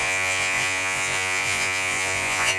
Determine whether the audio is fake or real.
fake